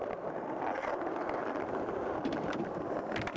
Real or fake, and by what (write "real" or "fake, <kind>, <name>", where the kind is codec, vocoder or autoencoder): real